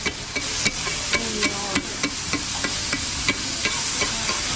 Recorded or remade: recorded